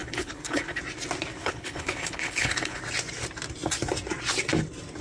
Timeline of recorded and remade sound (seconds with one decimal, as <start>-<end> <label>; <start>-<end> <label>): 0.0-0.8 remade; 0.8-1.4 recorded; 1.4-2.8 remade; 2.8-5.0 recorded